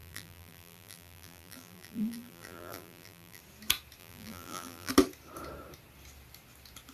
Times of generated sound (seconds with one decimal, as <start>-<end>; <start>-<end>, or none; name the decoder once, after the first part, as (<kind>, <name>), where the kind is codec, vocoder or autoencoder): 0.0-3.4 (vocoder, BigVGAN v2); 4.0-4.9